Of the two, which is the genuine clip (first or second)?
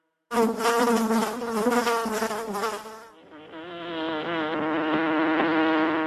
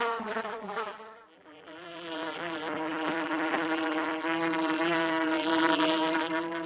first